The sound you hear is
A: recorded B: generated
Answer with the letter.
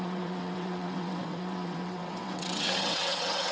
B